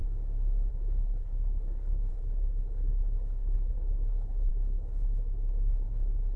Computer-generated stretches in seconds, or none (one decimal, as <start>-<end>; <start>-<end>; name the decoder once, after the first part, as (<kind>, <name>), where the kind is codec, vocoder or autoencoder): 0.7-6.4 (codec, HILCodec)